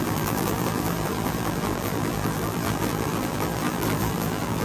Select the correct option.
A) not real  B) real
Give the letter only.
A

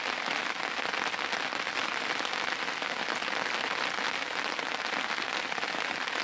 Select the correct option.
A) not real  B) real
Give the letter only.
B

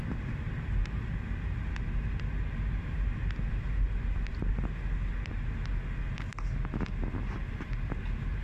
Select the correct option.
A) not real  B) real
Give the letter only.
B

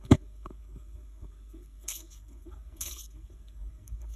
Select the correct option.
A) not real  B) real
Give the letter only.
A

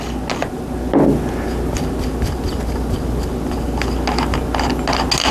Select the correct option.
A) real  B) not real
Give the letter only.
A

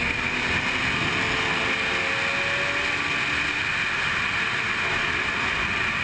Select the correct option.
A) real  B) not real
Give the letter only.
A